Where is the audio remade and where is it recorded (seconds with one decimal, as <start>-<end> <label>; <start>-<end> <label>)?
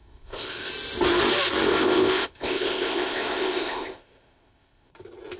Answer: 0.0-0.7 remade; 0.7-1.7 recorded; 1.7-4.9 remade; 4.9-5.4 recorded